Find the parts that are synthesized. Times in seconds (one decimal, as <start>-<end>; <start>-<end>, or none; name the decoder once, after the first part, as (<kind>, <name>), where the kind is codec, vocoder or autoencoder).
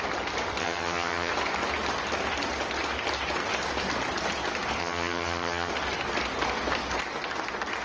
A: 0.6-1.3 (vocoder, HiFi-GAN); 4.8-5.7